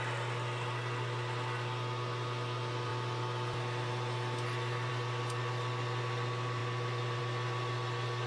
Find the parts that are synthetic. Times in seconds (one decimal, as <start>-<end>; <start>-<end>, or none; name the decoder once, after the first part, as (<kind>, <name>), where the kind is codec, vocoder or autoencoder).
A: none